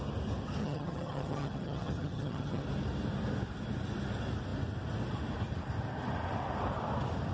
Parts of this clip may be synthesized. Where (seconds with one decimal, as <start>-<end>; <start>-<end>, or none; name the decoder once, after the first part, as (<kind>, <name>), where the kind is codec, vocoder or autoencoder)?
0.6-2.6 (vocoder, HiFi-GAN)